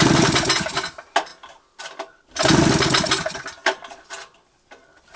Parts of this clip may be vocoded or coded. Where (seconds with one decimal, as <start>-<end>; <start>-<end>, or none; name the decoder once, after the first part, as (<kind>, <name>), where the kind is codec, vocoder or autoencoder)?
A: none